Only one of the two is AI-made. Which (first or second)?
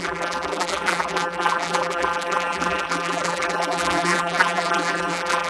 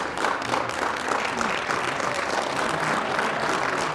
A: first